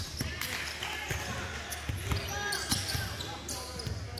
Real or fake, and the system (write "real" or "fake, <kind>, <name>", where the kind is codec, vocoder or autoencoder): real